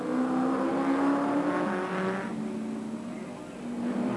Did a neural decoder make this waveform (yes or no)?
no